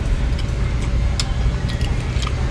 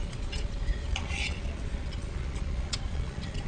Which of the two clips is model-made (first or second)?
second